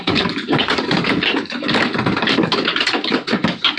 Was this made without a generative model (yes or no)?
no